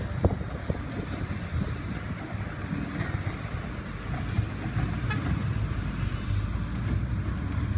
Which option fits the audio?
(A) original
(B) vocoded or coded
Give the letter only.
A